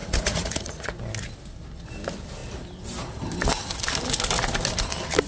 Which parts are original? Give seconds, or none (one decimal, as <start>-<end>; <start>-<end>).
1.0-5.3